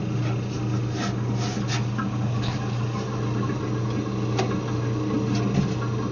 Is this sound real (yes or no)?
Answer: yes